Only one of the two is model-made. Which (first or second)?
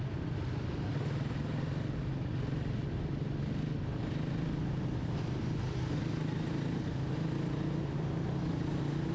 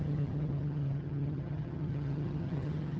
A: second